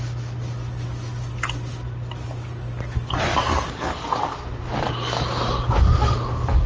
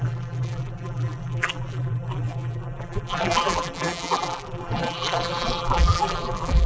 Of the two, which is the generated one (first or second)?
second